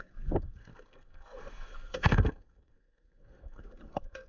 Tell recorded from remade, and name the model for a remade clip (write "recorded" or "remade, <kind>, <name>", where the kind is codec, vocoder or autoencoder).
remade, codec, SNAC